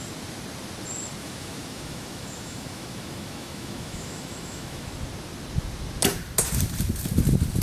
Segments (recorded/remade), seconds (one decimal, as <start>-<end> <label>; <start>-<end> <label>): 0.0-1.2 recorded; 1.2-4.9 remade; 4.9-7.6 recorded